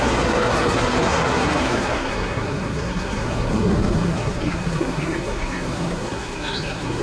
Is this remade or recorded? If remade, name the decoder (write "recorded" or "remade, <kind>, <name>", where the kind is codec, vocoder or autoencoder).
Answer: remade, codec, SNAC